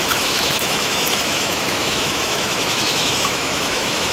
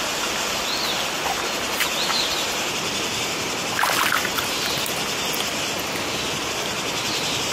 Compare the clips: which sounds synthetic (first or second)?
first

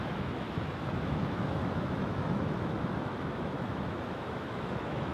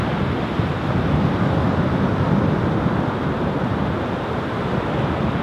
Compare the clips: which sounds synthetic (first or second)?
first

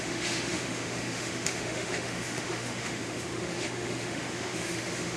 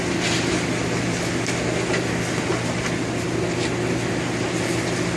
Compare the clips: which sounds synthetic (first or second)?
first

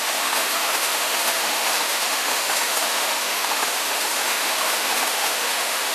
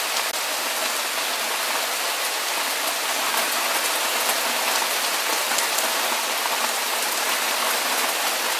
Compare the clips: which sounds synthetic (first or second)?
first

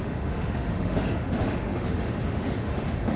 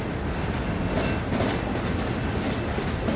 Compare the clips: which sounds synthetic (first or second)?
first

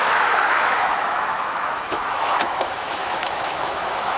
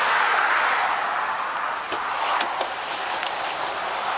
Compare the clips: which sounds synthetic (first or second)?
first